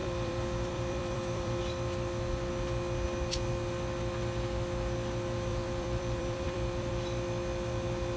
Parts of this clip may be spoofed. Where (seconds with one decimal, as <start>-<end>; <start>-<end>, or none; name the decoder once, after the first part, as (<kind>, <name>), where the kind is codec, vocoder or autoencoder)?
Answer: 0.0-1.6 (vocoder, BigVGAN v2); 5.5-6.9